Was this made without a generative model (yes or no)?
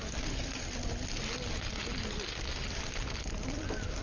yes